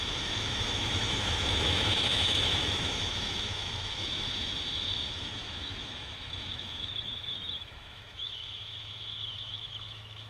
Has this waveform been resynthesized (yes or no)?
yes